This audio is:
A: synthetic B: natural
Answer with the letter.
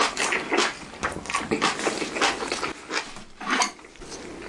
B